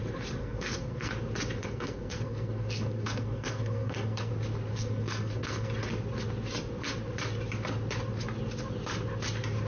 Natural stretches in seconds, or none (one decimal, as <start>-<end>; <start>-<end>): 0.0-0.4; 1.1-1.6; 4.3-4.7; 5.7-9.7